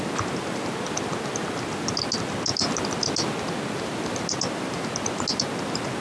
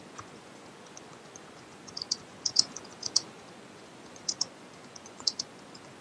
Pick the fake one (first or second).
second